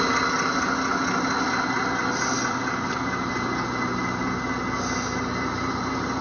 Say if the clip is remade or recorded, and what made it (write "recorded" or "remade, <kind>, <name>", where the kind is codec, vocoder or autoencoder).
recorded